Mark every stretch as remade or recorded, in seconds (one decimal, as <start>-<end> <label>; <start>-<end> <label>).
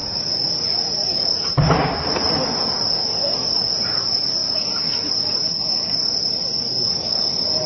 0.0-7.7 recorded